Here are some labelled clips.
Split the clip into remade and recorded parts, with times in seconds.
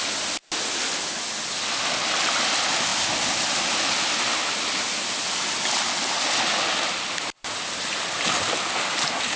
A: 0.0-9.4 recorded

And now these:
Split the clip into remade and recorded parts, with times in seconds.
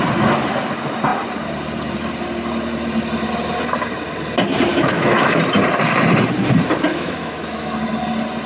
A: 0.0-4.7 recorded; 4.7-5.4 remade; 5.4-6.9 recorded; 6.9-7.7 remade; 7.7-8.5 recorded